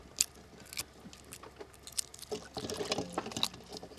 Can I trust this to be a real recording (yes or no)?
yes